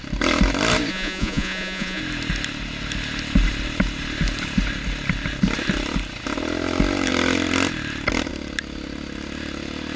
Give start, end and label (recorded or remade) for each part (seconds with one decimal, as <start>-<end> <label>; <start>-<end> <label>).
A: 0.0-0.9 recorded; 0.9-2.0 remade; 2.0-10.0 recorded